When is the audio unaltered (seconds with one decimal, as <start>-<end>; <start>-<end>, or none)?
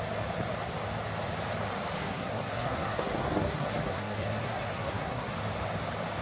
0.0-2.0; 5.3-6.2